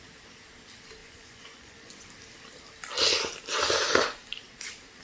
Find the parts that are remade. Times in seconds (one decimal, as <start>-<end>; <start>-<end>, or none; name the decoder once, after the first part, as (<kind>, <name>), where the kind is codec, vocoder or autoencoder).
1.0-2.1 (vocoder, Vocos)